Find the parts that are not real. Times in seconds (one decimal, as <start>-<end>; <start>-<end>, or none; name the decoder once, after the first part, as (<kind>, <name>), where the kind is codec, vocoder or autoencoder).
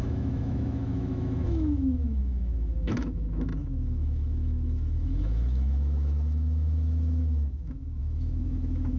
0.0-9.0 (autoencoder, DAC-VAE)